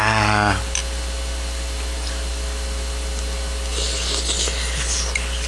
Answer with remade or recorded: recorded